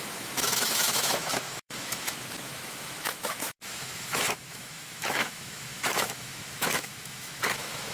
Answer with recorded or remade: remade